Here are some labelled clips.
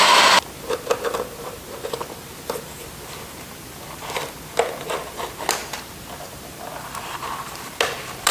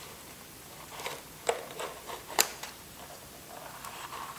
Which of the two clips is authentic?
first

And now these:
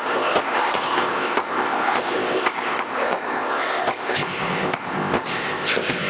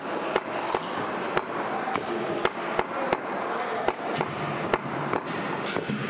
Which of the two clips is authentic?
second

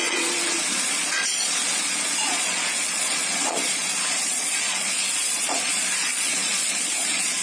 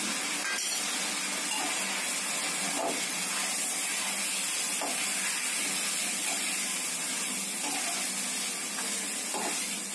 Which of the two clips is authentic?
second